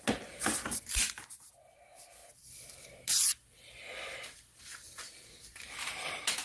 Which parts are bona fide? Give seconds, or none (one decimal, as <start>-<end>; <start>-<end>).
0.0-6.4